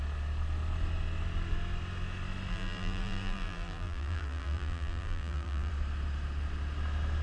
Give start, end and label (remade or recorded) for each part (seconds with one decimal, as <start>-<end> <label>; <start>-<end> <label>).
0.0-2.5 recorded; 2.5-5.7 remade; 5.7-7.2 recorded